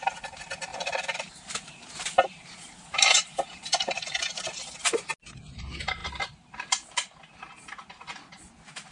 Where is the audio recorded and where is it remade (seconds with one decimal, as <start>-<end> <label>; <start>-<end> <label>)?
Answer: 0.0-0.7 recorded; 0.7-4.6 remade; 4.6-6.0 recorded; 6.0-7.4 remade; 7.4-8.9 recorded